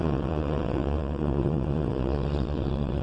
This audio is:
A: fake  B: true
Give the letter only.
A